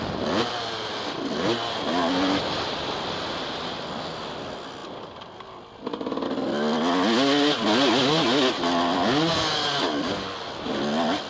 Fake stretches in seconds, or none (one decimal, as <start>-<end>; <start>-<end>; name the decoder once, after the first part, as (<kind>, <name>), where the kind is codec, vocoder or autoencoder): none